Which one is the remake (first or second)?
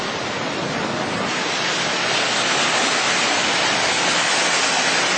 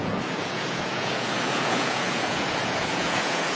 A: second